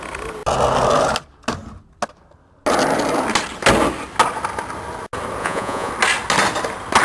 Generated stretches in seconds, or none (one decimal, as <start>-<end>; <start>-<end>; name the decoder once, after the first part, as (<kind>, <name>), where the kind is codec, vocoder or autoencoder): 5.4-5.9 (vocoder, Vocos)